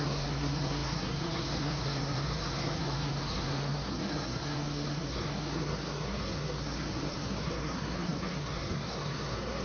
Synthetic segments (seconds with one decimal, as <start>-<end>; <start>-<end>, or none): 0.0-9.6